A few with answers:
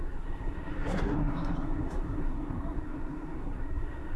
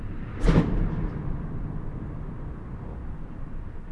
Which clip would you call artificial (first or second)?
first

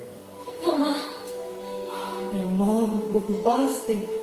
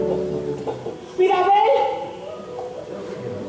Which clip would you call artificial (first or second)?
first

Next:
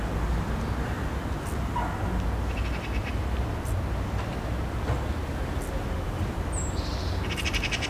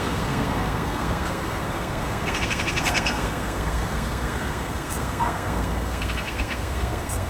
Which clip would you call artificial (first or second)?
second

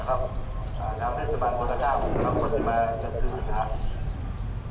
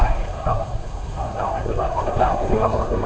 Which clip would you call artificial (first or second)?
second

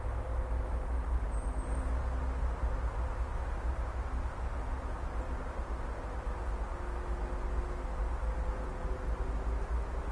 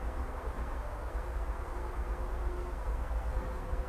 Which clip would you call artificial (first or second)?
second